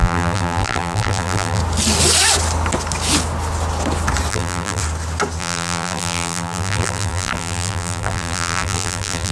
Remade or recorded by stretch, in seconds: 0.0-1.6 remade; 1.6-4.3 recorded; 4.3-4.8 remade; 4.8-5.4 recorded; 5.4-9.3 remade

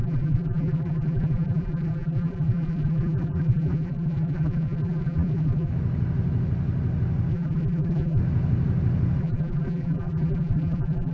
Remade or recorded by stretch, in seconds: 0.0-5.7 remade; 5.7-7.3 recorded; 7.3-8.2 remade; 8.2-9.2 recorded; 9.2-11.1 remade

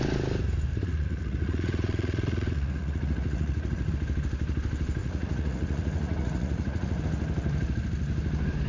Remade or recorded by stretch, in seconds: 0.0-0.7 recorded; 0.7-3.9 remade; 3.9-5.0 recorded; 5.0-7.0 remade; 7.0-8.7 recorded